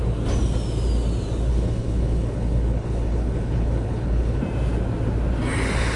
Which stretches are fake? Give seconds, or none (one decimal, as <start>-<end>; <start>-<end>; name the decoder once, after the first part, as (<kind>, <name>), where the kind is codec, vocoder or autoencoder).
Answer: 1.5-4.4 (codec, HILCodec)